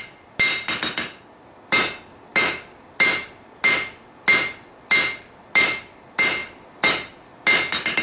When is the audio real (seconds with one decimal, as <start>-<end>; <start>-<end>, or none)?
0.0-8.0